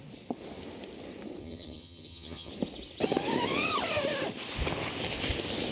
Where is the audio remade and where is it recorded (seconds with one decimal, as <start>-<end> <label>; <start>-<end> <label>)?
0.0-1.4 recorded; 1.4-2.5 remade; 2.5-5.7 recorded